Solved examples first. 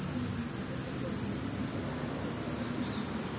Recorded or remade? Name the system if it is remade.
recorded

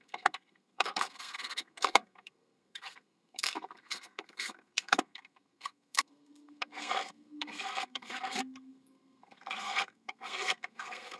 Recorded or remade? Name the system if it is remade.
remade, codec, SNAC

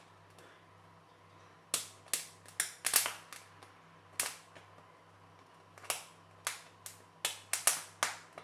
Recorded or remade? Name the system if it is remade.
recorded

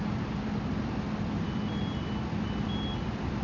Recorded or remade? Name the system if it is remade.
recorded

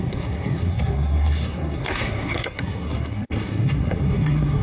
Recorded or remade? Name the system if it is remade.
remade, codec, SNAC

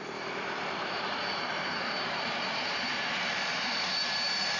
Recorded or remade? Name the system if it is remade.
remade, vocoder, BigVGAN v2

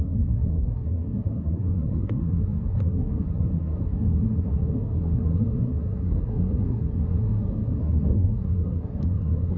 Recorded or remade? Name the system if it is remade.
remade, codec, SNAC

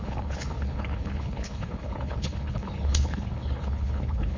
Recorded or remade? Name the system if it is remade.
remade, codec, HILCodec